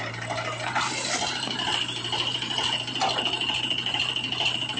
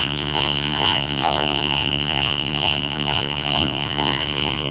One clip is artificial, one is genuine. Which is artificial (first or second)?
second